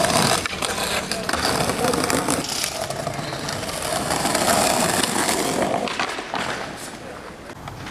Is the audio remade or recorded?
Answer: recorded